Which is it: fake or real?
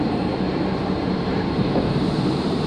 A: fake